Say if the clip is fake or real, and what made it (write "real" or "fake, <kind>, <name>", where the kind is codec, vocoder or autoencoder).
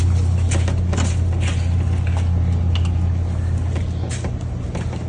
real